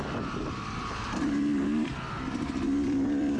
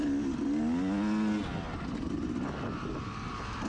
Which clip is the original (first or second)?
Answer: second